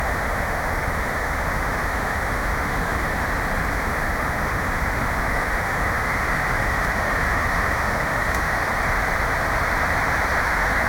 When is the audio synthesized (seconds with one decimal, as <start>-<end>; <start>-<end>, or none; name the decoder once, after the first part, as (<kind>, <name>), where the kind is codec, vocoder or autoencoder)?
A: 0.0-3.1 (autoencoder, DAC-VAE); 3.7-8.7; 10.4-10.9